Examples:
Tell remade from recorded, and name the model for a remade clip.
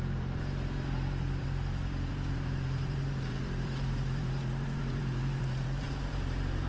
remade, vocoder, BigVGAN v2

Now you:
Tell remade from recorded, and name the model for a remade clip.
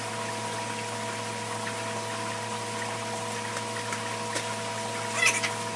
recorded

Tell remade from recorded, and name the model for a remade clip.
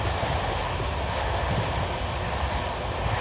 recorded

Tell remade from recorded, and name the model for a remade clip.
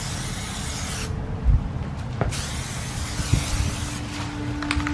recorded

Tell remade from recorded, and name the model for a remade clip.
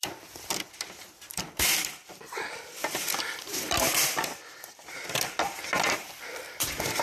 remade, vocoder, BigVGAN v2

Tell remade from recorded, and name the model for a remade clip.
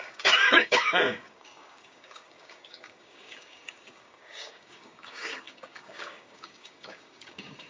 remade, codec, DAC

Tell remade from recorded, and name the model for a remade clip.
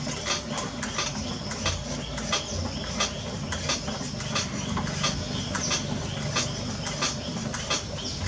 recorded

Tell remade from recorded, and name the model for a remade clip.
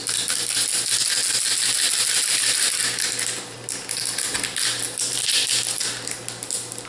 recorded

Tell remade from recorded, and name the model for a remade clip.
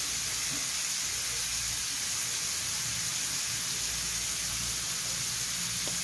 recorded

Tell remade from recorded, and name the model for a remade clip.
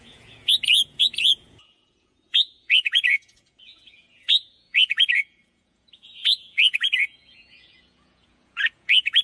remade, vocoder, Vocos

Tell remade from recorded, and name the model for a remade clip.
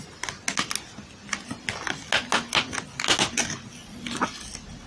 recorded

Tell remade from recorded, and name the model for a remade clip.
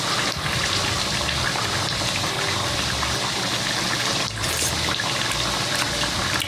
recorded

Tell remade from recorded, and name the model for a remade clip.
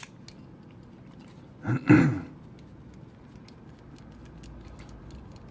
recorded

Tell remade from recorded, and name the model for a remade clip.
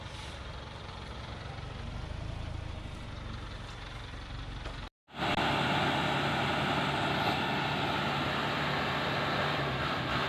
recorded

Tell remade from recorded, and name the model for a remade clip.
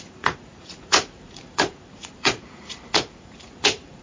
remade, vocoder, Vocos